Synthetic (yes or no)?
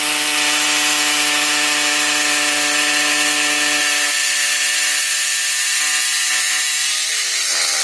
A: no